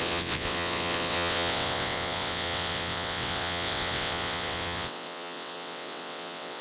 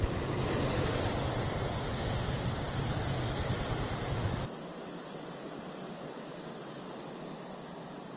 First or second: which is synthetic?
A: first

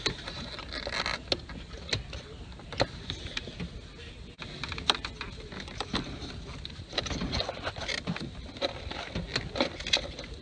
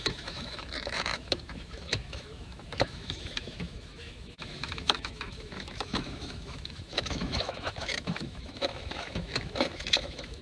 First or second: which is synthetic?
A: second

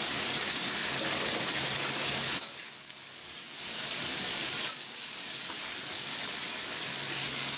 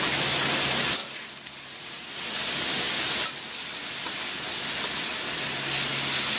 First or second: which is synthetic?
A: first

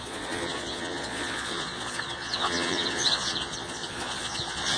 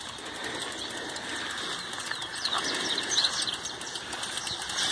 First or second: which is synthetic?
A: first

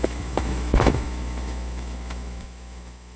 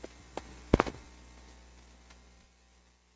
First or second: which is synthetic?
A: first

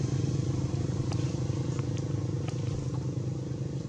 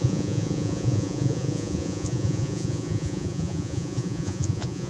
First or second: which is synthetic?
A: second